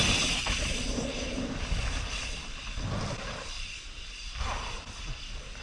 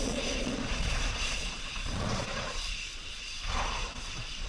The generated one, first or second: second